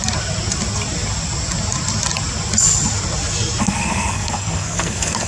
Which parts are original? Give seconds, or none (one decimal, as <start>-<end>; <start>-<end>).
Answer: 0.0-3.6